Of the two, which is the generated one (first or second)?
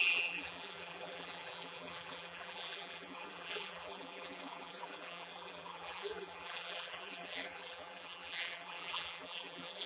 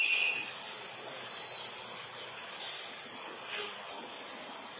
first